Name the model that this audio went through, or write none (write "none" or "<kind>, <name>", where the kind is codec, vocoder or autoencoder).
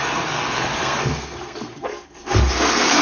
codec, SNAC